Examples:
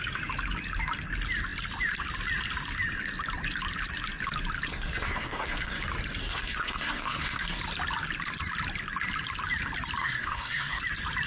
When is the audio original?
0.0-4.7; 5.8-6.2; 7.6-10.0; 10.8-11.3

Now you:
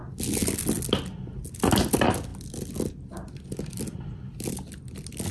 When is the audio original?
0.0-5.3